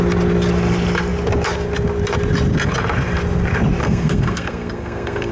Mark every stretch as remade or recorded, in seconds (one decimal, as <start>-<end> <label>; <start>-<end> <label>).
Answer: 0.0-3.8 recorded; 3.8-5.3 remade